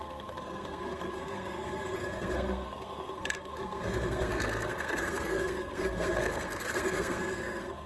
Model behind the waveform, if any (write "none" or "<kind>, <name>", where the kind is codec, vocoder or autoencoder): codec, SNAC